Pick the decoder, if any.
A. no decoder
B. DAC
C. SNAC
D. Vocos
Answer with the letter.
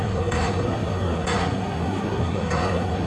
C